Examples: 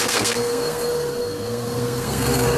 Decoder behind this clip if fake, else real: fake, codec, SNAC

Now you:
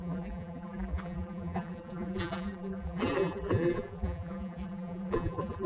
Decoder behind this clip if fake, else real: fake, vocoder, BigVGAN v2